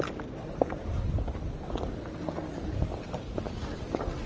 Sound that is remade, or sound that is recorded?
recorded